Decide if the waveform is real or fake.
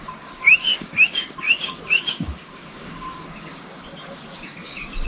fake